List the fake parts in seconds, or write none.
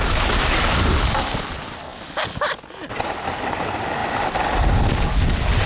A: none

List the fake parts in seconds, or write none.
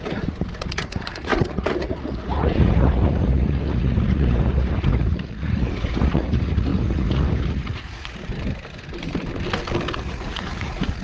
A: 0.0-8.3 (vocoder, Vocos); 10.0-11.0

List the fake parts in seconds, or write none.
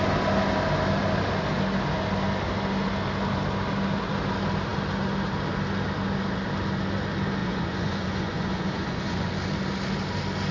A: 7.4-9.3 (vocoder, Vocos)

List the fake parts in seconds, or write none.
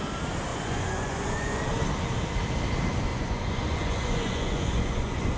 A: 0.5-1.6 (vocoder, Vocos); 3.1-5.4